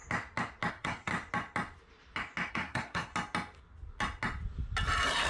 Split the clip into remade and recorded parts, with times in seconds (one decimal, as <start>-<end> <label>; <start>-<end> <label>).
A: 0.0-0.7 recorded; 0.7-1.1 remade; 1.1-2.5 recorded; 2.5-3.1 remade; 3.1-5.3 recorded